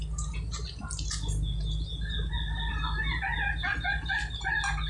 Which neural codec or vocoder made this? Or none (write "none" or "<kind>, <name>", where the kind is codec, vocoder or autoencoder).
none